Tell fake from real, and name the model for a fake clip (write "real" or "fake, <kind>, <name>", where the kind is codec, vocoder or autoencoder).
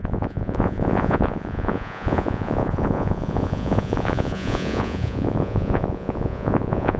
fake, vocoder, Vocos